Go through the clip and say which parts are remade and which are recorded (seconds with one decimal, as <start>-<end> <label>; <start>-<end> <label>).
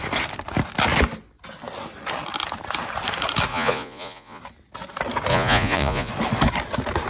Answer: 0.0-3.5 recorded; 3.5-4.4 remade; 4.4-5.3 recorded; 5.3-6.1 remade; 6.1-7.1 recorded